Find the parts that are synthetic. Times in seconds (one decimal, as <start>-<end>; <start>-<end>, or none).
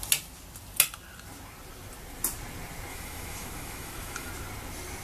2.9-4.3